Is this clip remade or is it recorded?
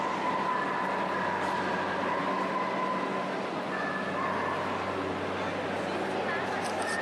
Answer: recorded